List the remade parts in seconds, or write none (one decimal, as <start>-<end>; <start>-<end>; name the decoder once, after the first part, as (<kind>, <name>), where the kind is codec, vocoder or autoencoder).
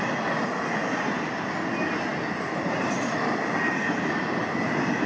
none